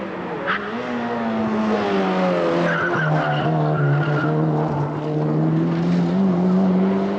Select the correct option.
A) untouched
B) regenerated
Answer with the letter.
A